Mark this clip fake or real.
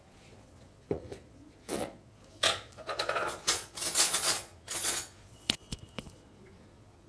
fake